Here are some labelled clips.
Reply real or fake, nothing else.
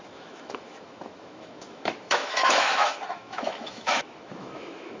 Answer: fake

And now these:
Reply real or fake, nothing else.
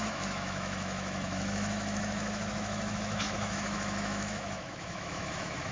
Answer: fake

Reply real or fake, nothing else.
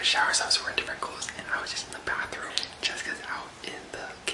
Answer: real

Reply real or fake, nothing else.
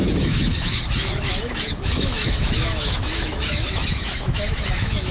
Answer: fake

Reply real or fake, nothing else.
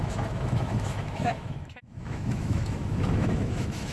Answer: fake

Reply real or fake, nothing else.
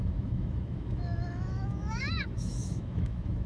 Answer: fake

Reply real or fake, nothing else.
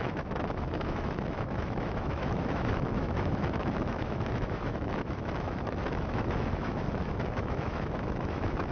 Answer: fake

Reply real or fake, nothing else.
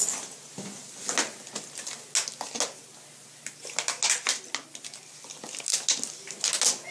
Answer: real